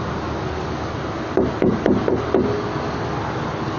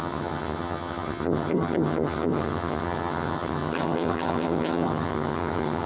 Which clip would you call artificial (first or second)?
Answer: second